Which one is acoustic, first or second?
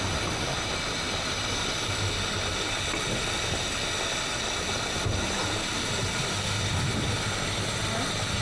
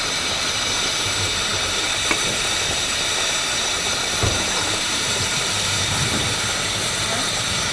first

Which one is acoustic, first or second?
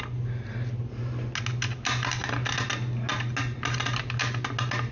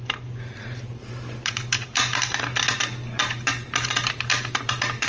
first